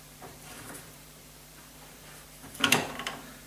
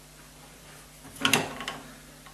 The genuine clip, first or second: second